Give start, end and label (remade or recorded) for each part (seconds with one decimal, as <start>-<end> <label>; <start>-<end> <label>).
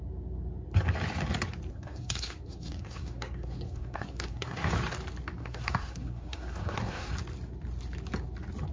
0.0-1.7 recorded; 1.7-4.7 remade; 4.7-5.4 recorded; 5.4-7.1 remade; 7.1-8.7 recorded